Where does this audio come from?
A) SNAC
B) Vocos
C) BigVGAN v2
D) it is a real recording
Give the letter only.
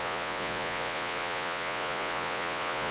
B